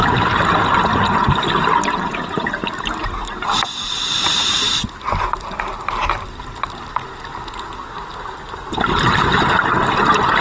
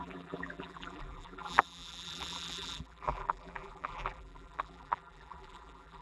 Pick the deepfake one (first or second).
second